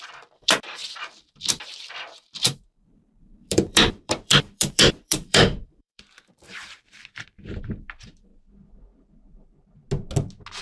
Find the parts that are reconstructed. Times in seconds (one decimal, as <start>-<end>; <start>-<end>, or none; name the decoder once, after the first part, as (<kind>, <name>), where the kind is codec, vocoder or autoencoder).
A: 0.0-0.8 (vocoder, BigVGAN v2); 1.5-8.3